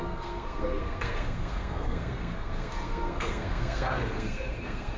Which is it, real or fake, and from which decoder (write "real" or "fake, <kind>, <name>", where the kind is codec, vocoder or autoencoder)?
fake, codec, SNAC